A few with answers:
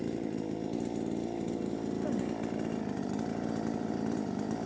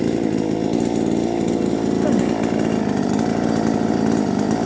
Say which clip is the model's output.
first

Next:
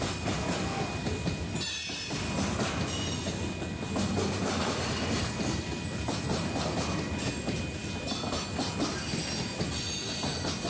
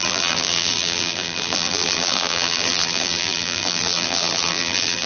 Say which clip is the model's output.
second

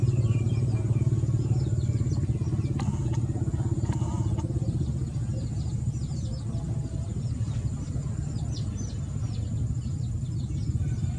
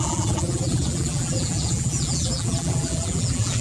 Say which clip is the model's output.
second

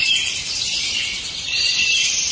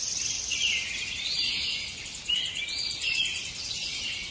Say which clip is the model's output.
first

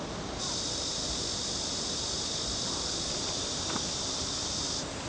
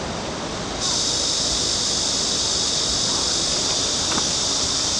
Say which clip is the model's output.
first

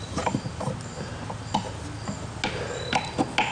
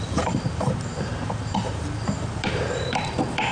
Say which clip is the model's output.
second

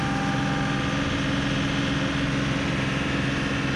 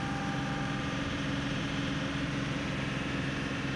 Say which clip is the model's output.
second